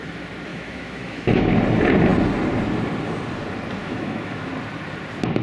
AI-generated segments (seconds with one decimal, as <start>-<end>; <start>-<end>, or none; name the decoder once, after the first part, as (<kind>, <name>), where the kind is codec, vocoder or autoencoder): 0.5-1.5 (autoencoder, DAC-VAE); 3.8-4.5